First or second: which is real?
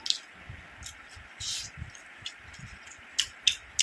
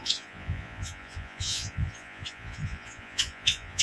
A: first